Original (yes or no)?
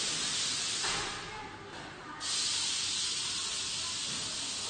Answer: yes